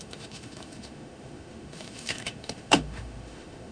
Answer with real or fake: fake